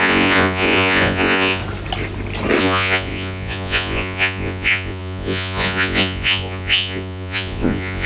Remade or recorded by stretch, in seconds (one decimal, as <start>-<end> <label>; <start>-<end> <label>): 0.0-1.6 remade; 1.6-2.6 recorded; 2.6-8.1 remade